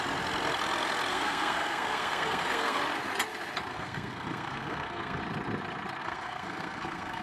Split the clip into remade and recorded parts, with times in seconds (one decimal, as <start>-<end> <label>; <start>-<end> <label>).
0.0-1.1 recorded; 1.1-2.8 remade; 2.8-3.7 recorded; 3.7-5.2 remade; 5.2-6.0 recorded; 6.0-7.2 remade

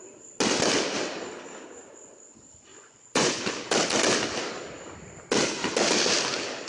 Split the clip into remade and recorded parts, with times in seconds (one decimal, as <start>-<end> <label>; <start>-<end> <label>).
0.0-2.7 recorded; 2.7-3.4 remade; 3.4-6.7 recorded

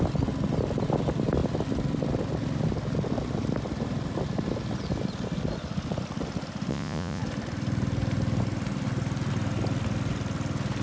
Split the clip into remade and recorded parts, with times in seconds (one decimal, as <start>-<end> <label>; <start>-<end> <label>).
0.0-6.7 recorded; 6.7-7.2 remade; 7.2-10.8 recorded